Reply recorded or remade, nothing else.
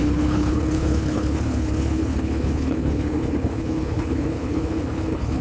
remade